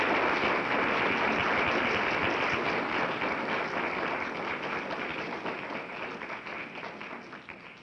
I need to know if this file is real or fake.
real